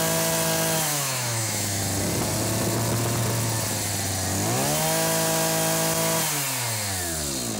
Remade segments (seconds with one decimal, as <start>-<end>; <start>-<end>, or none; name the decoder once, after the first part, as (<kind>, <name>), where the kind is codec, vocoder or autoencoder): 0.9-1.8 (autoencoder, DAC-VAE)